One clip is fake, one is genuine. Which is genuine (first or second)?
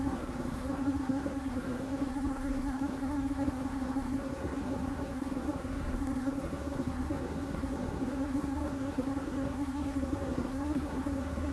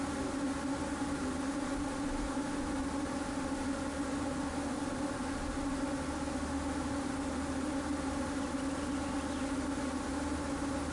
second